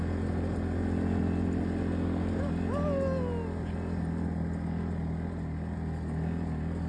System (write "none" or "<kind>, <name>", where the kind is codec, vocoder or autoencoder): none